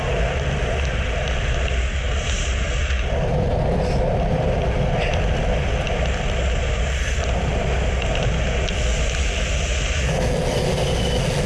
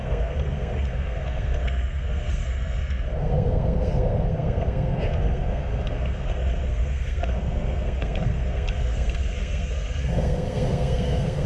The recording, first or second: first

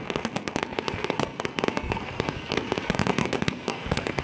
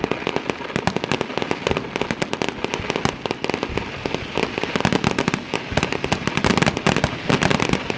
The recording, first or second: second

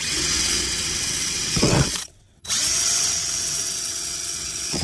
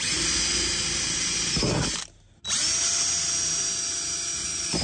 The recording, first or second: second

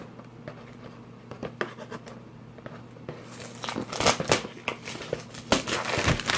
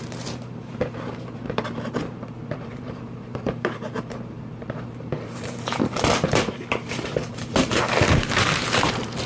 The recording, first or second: first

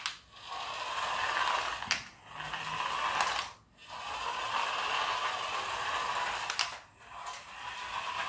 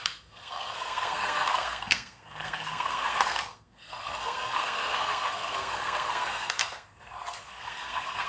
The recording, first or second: first